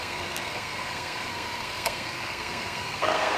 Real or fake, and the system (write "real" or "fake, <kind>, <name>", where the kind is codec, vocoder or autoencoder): fake, codec, SNAC